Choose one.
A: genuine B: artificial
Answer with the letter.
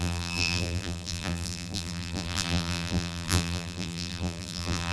B